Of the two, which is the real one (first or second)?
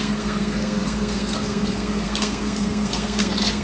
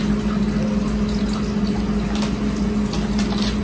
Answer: second